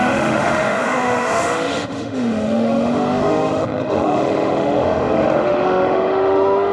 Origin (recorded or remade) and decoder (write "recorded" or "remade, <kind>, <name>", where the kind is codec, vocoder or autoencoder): remade, autoencoder, DAC-VAE